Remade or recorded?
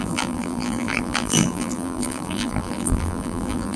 remade